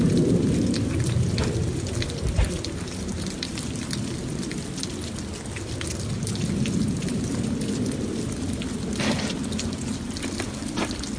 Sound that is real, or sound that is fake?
real